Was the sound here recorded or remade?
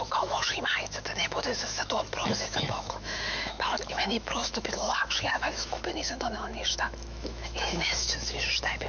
remade